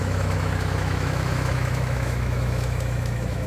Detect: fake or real fake